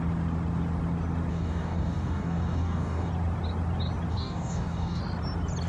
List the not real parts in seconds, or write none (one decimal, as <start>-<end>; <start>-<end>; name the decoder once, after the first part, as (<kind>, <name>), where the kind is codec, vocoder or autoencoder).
1.3-3.1 (codec, DAC); 4.1-5.0